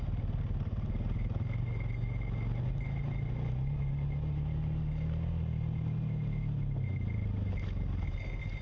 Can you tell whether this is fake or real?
real